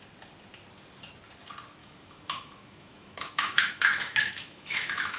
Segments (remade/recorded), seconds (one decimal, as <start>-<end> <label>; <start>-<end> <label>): 0.0-1.8 recorded; 1.8-5.2 remade